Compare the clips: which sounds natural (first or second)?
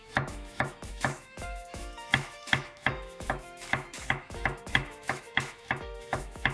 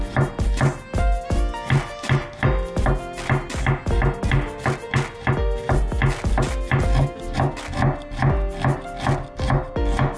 second